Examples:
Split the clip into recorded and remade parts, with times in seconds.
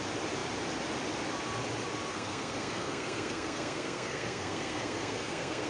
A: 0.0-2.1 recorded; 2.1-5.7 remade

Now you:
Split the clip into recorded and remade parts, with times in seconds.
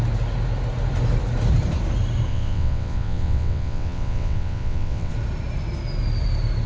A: 0.0-2.3 recorded; 2.3-5.1 remade; 5.1-6.7 recorded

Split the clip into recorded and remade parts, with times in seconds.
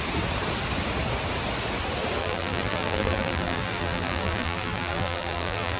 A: 0.0-2.2 recorded; 2.2-5.8 remade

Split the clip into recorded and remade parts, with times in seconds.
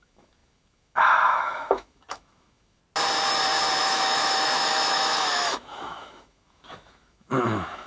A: 0.0-2.8 remade; 2.8-3.8 recorded; 3.8-7.9 remade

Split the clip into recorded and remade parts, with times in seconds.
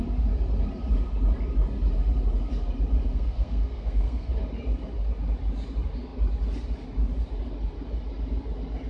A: 0.0-3.1 recorded; 3.1-4.3 remade; 4.3-8.9 recorded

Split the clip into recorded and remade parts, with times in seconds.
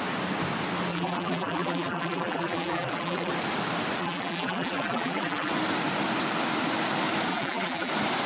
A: 0.0-0.9 recorded; 0.9-3.3 remade; 3.3-4.0 recorded; 4.0-5.5 remade; 5.5-7.3 recorded; 7.3-7.9 remade; 7.9-8.3 recorded